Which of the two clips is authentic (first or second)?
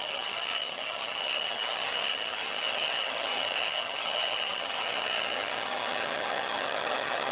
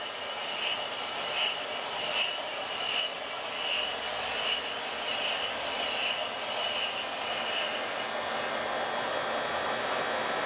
second